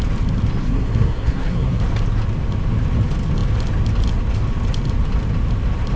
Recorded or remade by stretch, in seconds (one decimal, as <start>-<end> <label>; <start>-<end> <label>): 0.0-0.6 recorded; 0.6-1.8 remade; 1.8-6.0 recorded